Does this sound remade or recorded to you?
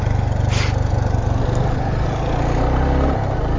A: recorded